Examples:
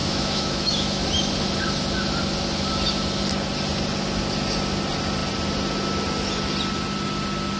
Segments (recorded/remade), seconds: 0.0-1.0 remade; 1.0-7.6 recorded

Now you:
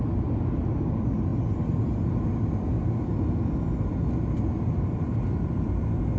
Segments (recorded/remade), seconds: 0.0-6.2 recorded